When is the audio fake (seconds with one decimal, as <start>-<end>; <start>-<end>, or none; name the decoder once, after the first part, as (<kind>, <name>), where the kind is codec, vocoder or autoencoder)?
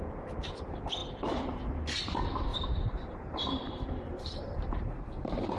2.5-5.0 (vocoder, BigVGAN v2)